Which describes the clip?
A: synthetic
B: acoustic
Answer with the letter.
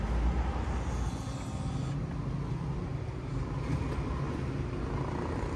B